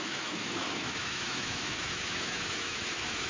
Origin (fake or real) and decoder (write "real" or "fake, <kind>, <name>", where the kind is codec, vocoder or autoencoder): fake, autoencoder, DAC-VAE